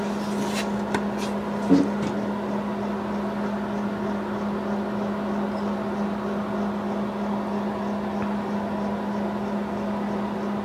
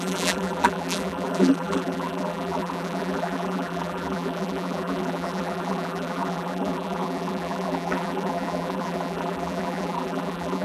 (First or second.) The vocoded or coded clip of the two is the second